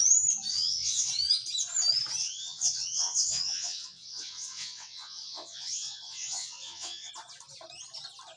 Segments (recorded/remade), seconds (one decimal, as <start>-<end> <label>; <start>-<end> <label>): 0.0-0.5 recorded; 0.5-1.1 remade; 1.1-2.2 recorded; 2.2-7.1 remade; 7.1-8.4 recorded